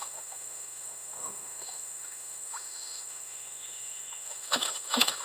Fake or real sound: fake